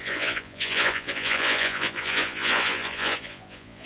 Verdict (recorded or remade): remade